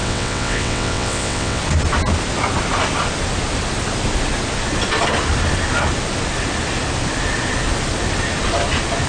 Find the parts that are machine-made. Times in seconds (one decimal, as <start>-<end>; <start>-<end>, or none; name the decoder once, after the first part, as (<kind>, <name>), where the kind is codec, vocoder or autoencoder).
0.0-1.6 (vocoder, WaveNeXt)